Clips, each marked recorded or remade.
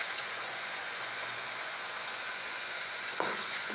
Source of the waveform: remade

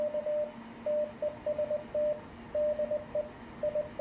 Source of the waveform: recorded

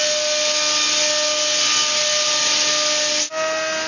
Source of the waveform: recorded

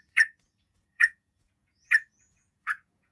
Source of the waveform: remade